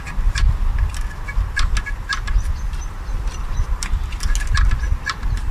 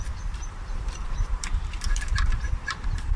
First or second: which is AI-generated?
second